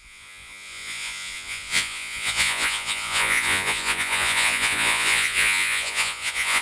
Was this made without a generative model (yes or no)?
no